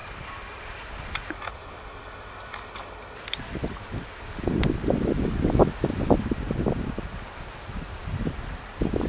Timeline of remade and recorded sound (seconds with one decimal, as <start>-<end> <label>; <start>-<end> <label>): 0.0-3.7 remade; 3.7-9.1 recorded